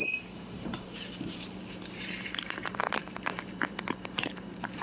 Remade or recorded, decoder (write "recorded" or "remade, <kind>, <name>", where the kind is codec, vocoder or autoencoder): remade, vocoder, BigVGAN v2